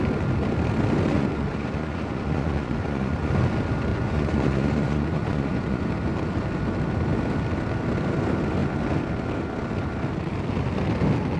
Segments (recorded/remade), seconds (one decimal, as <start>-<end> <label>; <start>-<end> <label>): 0.0-1.1 recorded; 1.1-3.3 remade; 3.3-3.9 recorded; 3.9-5.8 remade; 5.8-11.4 recorded